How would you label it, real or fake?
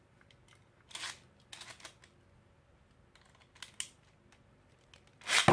real